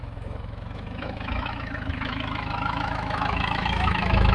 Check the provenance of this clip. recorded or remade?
remade